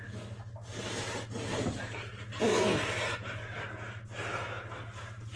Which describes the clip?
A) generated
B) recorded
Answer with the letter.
B